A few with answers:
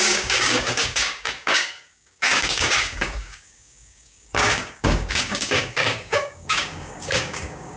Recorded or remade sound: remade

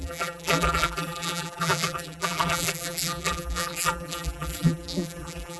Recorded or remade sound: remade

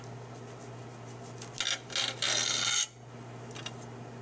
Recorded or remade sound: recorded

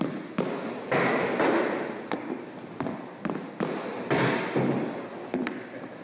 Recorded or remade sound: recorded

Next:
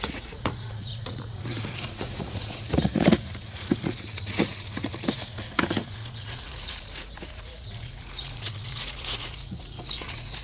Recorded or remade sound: remade